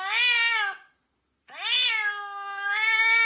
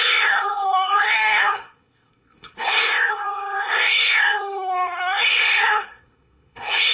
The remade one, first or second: second